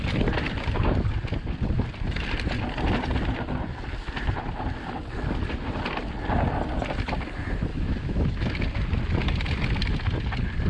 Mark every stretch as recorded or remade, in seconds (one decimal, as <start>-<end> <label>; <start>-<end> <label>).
0.0-7.7 recorded; 7.7-8.5 remade; 8.5-10.7 recorded